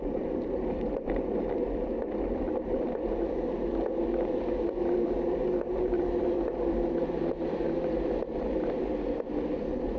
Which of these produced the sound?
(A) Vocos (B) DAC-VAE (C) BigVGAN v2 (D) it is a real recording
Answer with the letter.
C